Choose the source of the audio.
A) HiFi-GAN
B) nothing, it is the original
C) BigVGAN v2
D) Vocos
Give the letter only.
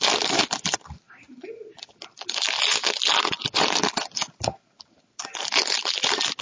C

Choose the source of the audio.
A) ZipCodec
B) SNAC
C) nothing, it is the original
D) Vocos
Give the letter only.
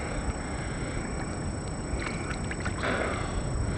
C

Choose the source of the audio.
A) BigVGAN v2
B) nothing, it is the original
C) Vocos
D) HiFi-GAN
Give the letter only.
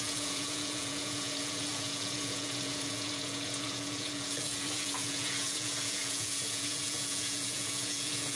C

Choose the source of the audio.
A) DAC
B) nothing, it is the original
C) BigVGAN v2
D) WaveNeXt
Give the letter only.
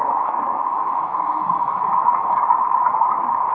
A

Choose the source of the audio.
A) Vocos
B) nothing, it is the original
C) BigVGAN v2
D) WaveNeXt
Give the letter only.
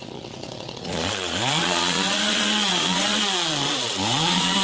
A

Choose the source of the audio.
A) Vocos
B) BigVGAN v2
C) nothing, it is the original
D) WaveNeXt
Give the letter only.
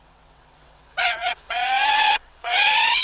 D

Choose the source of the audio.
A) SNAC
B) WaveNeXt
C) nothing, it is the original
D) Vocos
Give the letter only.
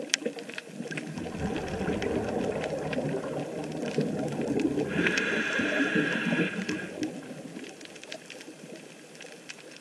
C